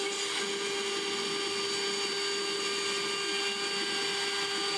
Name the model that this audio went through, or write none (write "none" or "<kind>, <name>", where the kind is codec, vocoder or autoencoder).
none